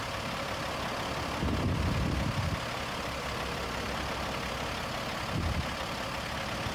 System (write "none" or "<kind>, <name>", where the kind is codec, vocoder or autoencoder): none